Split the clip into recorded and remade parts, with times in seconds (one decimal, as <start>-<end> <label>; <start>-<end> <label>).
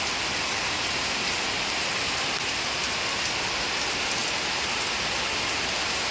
0.0-6.1 recorded